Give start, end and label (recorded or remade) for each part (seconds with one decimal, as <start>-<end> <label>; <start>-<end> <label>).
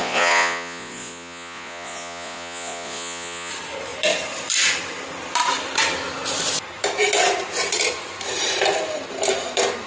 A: 0.0-3.5 remade; 3.5-9.9 recorded